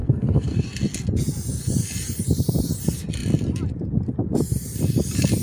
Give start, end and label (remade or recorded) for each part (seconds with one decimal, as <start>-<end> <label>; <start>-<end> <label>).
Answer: 0.0-0.6 remade; 0.6-5.4 recorded